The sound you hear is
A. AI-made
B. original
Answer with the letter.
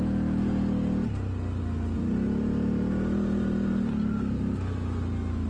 B